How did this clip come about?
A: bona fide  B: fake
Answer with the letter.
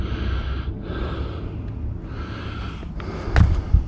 A